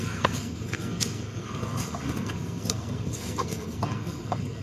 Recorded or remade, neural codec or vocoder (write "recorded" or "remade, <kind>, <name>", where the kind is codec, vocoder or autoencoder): remade, codec, SNAC